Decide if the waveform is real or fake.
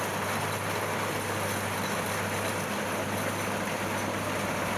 real